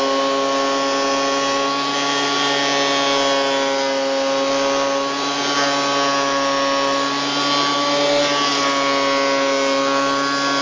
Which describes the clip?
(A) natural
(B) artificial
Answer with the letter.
A